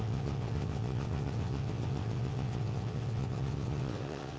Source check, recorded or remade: remade